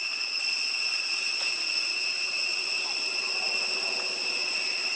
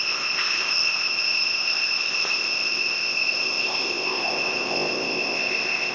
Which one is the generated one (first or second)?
second